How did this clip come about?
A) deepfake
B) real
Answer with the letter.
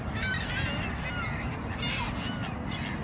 B